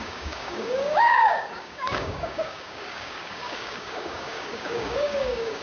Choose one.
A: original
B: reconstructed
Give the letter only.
B